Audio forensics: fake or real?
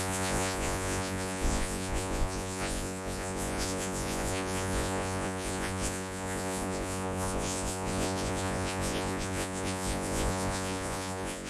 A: fake